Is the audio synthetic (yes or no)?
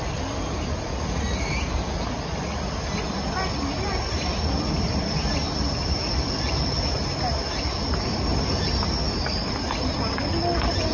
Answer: no